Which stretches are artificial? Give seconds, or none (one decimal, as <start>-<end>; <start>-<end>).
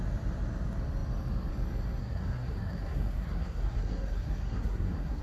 2.0-5.2